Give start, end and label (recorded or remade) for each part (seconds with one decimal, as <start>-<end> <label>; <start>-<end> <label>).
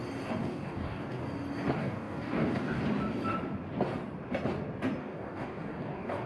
0.0-0.4 recorded; 0.4-1.2 remade; 1.2-1.8 recorded; 1.8-2.8 remade; 2.8-5.0 recorded; 5.0-6.3 remade